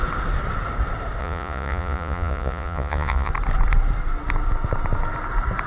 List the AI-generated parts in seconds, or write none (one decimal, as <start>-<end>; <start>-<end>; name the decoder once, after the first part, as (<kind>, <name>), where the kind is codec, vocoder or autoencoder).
1.2-3.3 (vocoder, Vocos)